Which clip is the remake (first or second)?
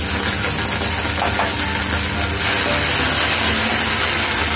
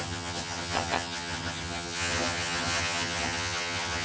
second